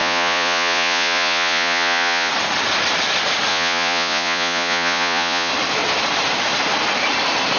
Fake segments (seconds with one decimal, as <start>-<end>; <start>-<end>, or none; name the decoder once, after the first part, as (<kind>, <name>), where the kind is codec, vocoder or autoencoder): 0.0-2.3 (vocoder, Vocos); 3.5-5.5